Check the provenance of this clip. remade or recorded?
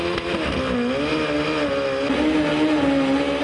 recorded